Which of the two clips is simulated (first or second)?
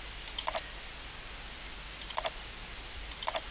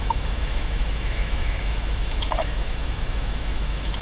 second